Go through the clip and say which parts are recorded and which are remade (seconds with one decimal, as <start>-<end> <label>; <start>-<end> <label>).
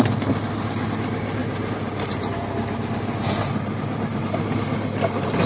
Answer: 0.0-1.4 recorded; 1.4-4.2 remade; 4.2-5.5 recorded